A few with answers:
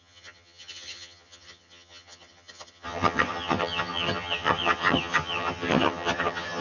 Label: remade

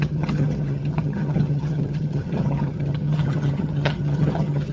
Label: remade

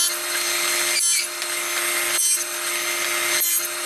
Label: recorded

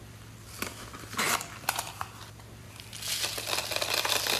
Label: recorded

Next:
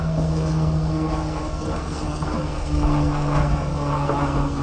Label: remade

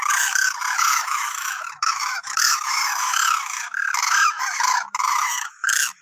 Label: remade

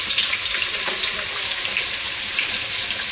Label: remade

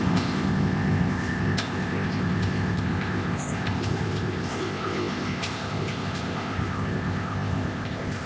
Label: remade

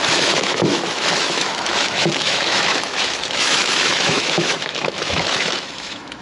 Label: remade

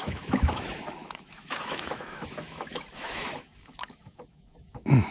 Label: remade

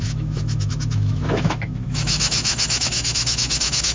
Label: remade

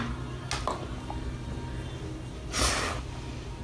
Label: recorded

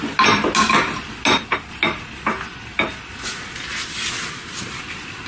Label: recorded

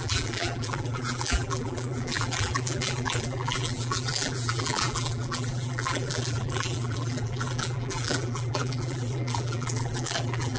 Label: remade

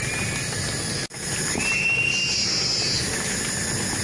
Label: recorded